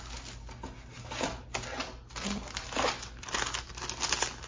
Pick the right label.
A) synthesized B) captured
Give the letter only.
B